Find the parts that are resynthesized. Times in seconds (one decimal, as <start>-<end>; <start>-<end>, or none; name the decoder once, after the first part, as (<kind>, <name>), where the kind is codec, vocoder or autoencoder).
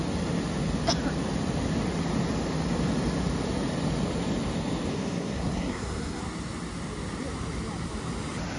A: 4.9-6.2 (codec, SNAC)